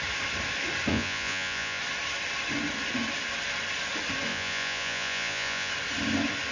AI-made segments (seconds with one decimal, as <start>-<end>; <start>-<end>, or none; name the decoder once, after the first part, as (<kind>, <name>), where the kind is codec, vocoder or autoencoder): 0.9-1.8 (vocoder, Vocos); 4.3-5.7